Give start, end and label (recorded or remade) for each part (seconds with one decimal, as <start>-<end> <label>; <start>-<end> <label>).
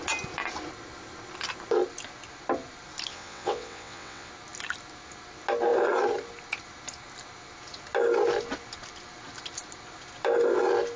0.0-3.1 recorded; 3.1-4.3 remade; 4.3-11.0 recorded